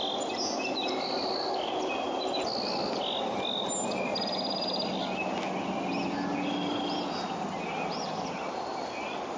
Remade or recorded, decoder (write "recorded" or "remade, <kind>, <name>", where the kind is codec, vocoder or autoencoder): recorded